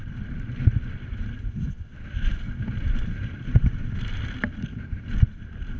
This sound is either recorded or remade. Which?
recorded